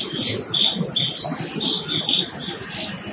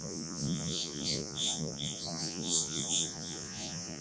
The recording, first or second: first